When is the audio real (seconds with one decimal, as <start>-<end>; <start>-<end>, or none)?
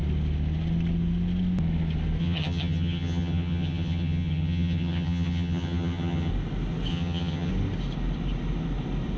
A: 0.0-2.2; 6.3-6.9; 7.5-9.2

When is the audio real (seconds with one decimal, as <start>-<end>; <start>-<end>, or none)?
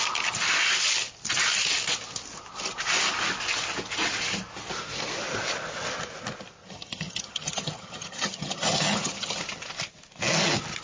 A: 0.0-6.6; 9.4-10.8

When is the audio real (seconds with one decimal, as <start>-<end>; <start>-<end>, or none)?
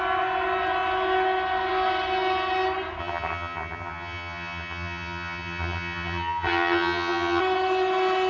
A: 0.0-3.0; 7.4-8.3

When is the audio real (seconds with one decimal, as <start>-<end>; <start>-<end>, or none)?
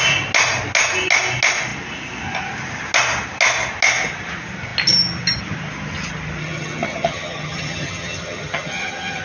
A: 0.0-6.4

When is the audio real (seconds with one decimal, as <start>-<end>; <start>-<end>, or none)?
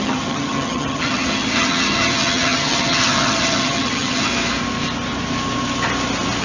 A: 4.3-6.4